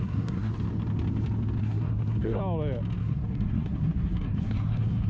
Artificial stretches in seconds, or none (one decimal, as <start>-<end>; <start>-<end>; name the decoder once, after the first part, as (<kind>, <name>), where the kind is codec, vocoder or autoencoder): 0.0-0.5 (codec, SNAC); 1.6-2.4; 3.0-5.1